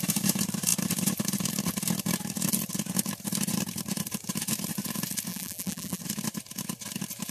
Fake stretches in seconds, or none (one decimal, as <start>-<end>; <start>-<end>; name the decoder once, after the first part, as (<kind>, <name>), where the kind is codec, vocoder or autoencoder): 5.3-6.0 (vocoder, BigVGAN v2)